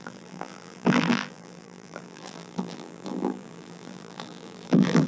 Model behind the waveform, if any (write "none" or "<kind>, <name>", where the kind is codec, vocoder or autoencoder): vocoder, BigVGAN v2